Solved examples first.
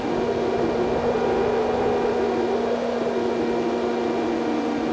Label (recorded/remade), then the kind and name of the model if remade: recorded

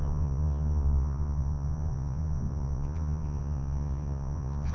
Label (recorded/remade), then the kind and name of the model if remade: remade, vocoder, Vocos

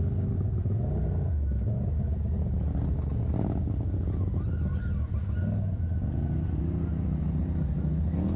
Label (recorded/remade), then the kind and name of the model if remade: recorded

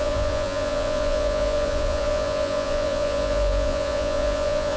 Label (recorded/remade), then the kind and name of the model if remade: remade, vocoder, Vocos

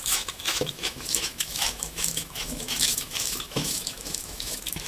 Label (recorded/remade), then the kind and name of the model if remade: remade, autoencoder, DAC-VAE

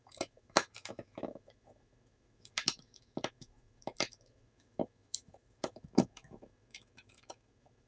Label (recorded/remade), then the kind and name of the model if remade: remade, autoencoder, DAC-VAE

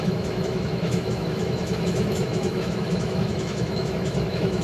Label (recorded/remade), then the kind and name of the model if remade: remade, autoencoder, DAC-VAE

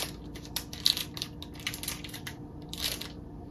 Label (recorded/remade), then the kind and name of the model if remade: recorded